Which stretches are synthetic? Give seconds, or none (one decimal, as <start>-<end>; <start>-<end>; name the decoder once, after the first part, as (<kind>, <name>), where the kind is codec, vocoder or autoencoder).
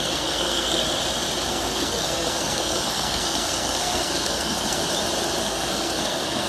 0.0-0.8 (codec, SNAC); 1.5-4.8; 5.4-6.5